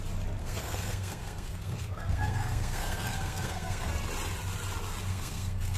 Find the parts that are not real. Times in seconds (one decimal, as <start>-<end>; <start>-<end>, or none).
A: 0.4-3.9; 5.1-5.8